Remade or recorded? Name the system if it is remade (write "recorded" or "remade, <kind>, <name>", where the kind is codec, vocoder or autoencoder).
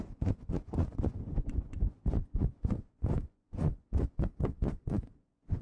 remade, vocoder, Vocos